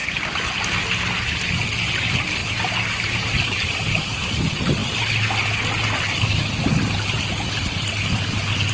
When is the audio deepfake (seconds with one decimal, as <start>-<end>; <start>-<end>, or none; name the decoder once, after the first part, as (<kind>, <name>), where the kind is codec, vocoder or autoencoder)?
2.4-4.3 (vocoder, BigVGAN v2)